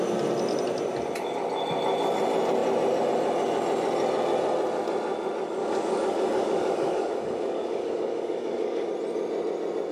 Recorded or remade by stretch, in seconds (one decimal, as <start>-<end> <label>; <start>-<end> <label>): 0.0-5.6 recorded; 5.6-8.9 remade; 8.9-9.9 recorded